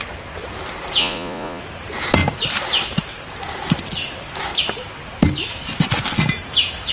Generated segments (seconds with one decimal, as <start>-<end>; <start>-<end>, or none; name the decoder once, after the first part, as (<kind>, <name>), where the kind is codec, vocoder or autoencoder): 1.0-1.6 (vocoder, Vocos)